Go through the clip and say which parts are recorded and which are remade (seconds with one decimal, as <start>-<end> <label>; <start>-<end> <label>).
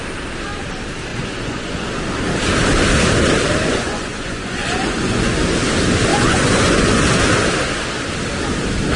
0.0-1.1 recorded; 1.1-1.9 remade; 1.9-3.7 recorded; 3.7-5.4 remade; 5.4-6.1 recorded; 6.1-7.0 remade; 7.0-9.0 recorded